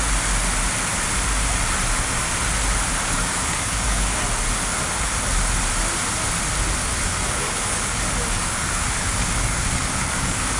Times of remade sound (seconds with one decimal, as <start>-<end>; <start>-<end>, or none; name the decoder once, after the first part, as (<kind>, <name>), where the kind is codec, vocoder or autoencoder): 2.9-4.2 (codec, DAC); 6.8-10.6